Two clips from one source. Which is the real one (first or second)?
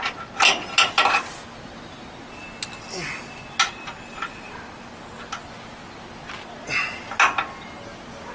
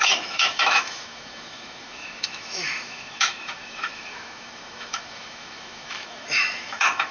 first